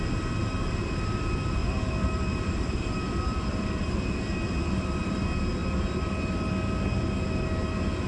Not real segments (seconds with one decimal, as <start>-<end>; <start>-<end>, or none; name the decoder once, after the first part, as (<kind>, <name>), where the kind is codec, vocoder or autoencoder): 1.6-5.1 (vocoder, BigVGAN v2)

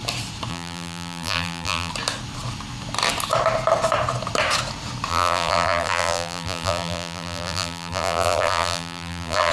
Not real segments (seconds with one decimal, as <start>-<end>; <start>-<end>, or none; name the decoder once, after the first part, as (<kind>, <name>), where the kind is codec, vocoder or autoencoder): 0.5-1.9 (vocoder, BigVGAN v2); 5.1-9.5